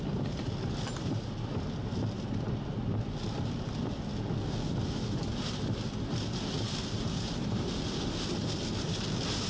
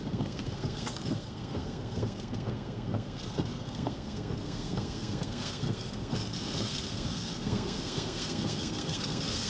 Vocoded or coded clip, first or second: second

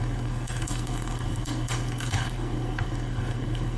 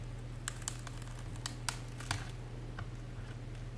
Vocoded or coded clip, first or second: first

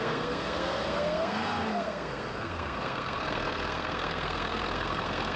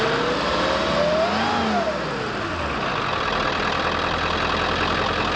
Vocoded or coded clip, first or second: first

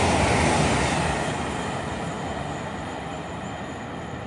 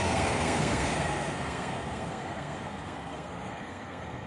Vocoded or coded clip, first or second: second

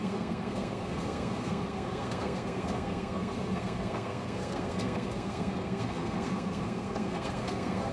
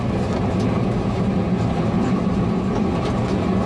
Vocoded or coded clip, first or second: first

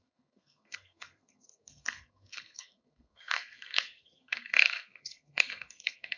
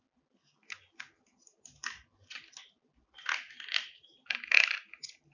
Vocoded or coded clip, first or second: first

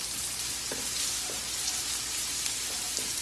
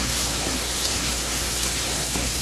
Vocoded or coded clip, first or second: second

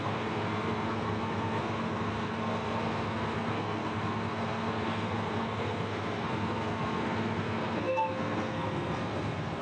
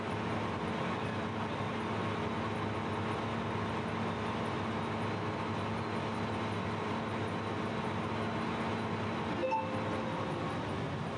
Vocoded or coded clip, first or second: first